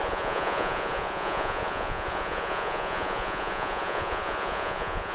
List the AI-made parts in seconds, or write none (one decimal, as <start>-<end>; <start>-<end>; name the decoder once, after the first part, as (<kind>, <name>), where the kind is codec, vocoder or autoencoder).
0.0-5.1 (vocoder, Vocos)